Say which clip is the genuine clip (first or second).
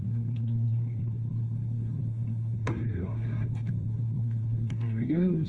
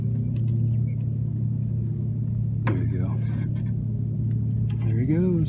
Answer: second